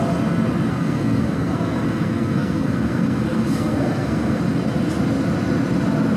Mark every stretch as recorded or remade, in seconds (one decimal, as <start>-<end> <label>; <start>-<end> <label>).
0.0-0.7 recorded; 0.7-4.4 remade; 4.4-6.2 recorded